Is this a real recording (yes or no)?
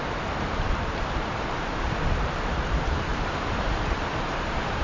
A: no